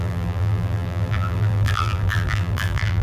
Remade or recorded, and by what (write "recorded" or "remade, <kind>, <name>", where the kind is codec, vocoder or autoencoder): remade, vocoder, BigVGAN v2